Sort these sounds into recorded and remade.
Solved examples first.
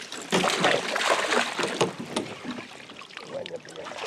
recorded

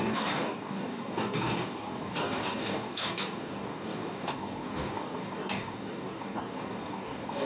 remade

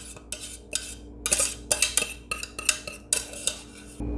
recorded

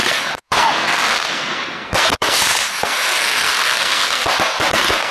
remade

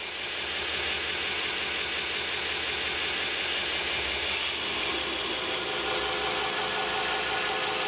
recorded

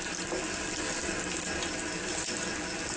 recorded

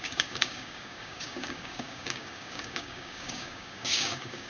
remade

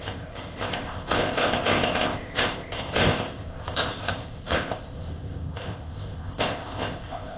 remade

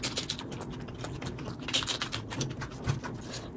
recorded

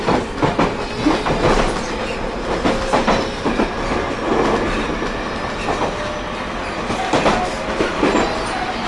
recorded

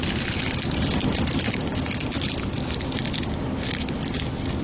recorded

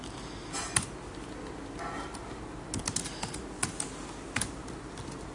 recorded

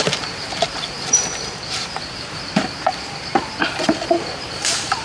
remade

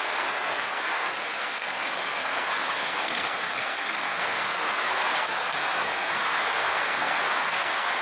remade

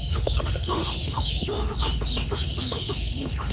remade